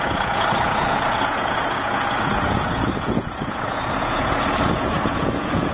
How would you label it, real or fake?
fake